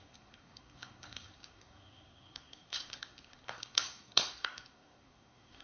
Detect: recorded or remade remade